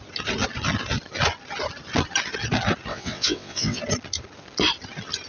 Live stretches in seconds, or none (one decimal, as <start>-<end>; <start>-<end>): 0.0-2.9; 3.8-5.3